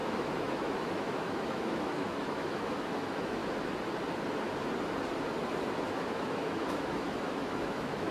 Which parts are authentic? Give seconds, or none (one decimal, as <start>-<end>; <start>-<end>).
3.4-5.9